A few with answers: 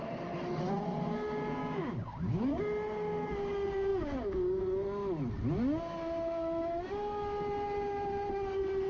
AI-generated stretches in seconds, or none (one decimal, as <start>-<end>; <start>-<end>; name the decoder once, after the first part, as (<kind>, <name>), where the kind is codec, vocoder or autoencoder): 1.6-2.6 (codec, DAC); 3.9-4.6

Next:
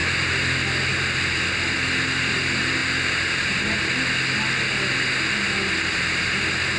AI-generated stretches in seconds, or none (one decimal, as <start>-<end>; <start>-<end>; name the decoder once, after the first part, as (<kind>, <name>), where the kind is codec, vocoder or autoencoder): 0.9-6.8 (vocoder, BigVGAN v2)

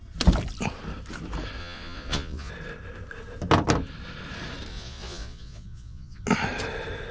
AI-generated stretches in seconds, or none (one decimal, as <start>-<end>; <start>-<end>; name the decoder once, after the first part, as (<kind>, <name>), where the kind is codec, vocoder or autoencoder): 1.6-2.5 (vocoder, Vocos); 4.7-6.2